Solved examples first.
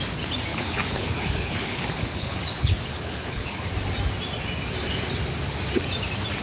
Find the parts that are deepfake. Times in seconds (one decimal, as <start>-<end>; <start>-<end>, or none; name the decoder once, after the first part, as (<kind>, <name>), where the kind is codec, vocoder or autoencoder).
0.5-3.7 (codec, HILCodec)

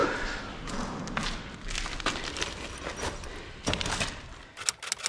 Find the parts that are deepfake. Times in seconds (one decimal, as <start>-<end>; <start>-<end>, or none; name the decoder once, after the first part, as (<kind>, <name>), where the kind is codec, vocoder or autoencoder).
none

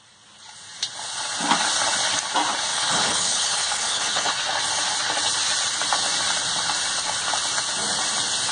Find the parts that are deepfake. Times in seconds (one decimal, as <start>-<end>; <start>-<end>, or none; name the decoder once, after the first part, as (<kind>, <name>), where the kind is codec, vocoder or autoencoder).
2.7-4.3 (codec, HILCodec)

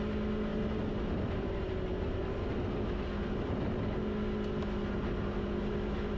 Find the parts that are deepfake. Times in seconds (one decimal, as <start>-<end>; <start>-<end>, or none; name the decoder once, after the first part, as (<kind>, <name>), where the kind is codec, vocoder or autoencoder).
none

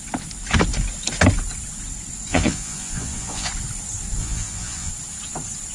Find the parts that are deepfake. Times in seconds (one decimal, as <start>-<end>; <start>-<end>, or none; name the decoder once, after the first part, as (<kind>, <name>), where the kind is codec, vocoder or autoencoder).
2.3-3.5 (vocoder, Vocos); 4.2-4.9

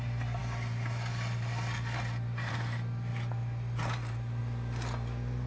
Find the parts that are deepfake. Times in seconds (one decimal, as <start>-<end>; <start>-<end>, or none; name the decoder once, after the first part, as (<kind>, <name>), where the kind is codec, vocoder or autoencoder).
none

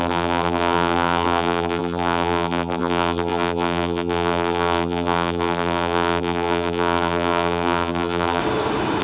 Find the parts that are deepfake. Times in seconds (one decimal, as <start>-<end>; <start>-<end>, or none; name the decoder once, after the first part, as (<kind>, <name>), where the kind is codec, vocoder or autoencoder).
0.0-8.4 (vocoder, BigVGAN v2)

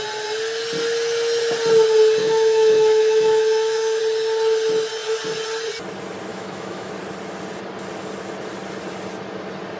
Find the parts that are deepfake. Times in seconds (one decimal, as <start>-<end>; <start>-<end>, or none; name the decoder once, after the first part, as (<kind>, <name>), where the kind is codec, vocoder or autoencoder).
2.2-4.0 (autoencoder, DAC-VAE); 6.3-6.9